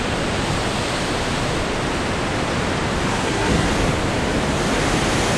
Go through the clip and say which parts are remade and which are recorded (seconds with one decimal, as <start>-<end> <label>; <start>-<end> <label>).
0.0-3.1 recorded; 3.1-3.7 remade; 3.7-5.4 recorded